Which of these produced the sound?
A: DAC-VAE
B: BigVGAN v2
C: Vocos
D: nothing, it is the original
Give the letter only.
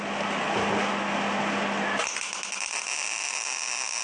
D